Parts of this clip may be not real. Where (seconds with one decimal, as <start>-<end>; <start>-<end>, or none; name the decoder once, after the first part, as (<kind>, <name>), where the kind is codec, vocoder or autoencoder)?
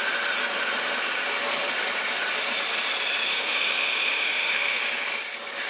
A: 3.3-4.8 (autoencoder, DAC-VAE)